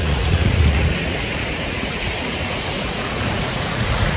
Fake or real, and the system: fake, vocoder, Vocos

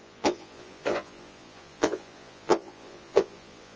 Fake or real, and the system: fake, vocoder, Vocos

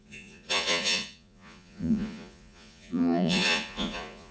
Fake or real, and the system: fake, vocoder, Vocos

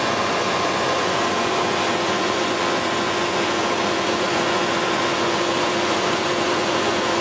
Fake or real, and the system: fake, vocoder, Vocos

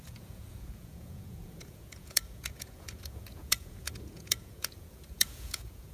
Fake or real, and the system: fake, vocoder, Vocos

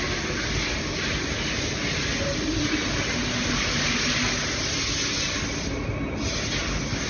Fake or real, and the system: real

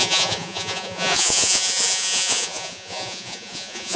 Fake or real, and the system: fake, vocoder, Vocos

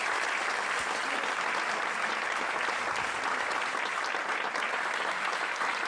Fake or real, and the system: real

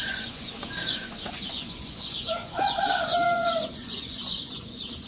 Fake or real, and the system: fake, vocoder, Vocos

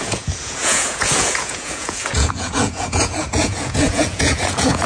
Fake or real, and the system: fake, vocoder, Vocos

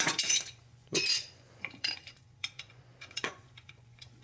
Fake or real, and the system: fake, vocoder, Vocos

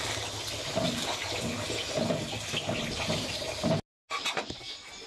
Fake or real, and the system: real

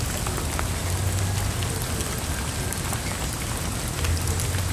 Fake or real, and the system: real